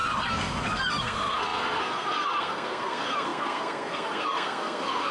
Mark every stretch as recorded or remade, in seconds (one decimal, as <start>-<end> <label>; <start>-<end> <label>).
0.0-5.1 remade